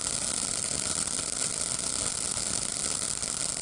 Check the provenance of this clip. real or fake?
real